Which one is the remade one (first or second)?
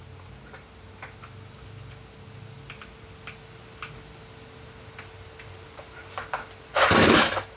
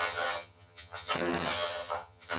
second